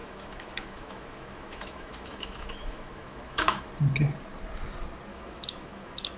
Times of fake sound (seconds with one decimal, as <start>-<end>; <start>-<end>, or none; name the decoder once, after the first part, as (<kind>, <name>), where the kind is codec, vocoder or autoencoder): 0.0-3.7 (autoencoder, DAC-VAE); 5.1-6.2